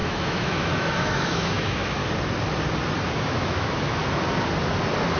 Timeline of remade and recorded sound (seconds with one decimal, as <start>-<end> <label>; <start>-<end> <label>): 0.0-2.0 remade; 2.0-3.2 recorded; 3.2-4.0 remade; 4.0-5.2 recorded